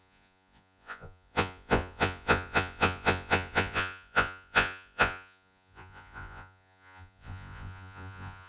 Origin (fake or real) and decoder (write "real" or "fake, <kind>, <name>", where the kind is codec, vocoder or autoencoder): fake, vocoder, Vocos